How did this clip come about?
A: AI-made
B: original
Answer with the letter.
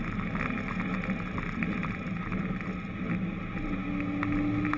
B